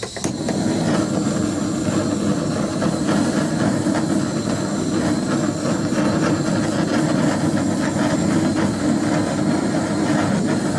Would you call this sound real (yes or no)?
yes